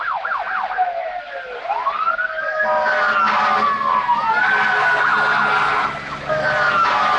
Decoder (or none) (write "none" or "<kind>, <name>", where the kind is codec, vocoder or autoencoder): none